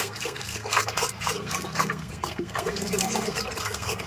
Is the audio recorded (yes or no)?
no